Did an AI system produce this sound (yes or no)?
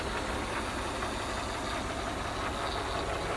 no